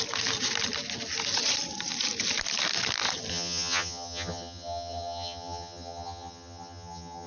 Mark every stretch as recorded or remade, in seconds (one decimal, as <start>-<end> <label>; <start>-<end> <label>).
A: 0.0-3.3 recorded; 3.3-7.3 remade